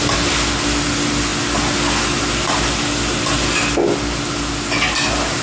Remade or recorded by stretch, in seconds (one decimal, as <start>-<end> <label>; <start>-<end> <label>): 0.0-5.4 recorded